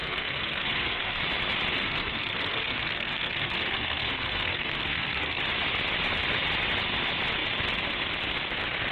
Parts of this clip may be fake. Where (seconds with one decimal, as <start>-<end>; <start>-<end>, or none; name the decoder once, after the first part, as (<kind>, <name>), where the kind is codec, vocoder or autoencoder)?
0.0-1.2 (codec, SNAC); 1.8-5.4